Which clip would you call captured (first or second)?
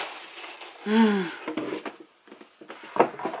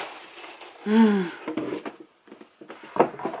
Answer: first